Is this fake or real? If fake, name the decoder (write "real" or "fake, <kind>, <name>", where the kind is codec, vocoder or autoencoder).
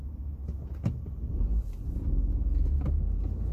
real